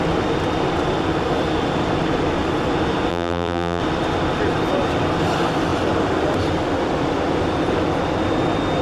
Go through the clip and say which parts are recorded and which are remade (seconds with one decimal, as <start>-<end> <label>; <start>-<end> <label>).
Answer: 0.0-3.1 recorded; 3.1-3.8 remade; 3.8-8.8 recorded